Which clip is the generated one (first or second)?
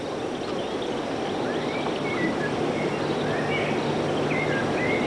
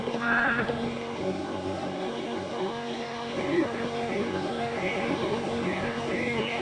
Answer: second